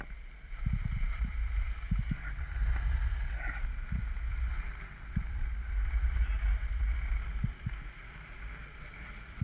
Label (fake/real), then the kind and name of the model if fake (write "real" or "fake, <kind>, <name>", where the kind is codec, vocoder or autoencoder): real